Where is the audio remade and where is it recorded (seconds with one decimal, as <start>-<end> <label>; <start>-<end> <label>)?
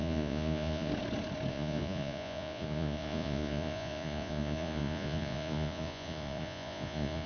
0.0-0.9 remade; 0.9-1.5 recorded; 1.5-7.3 remade